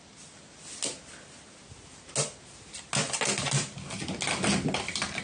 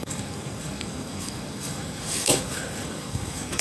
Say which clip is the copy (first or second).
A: second